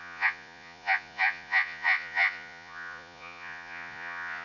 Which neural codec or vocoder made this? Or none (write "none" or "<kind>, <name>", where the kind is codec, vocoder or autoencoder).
vocoder, Vocos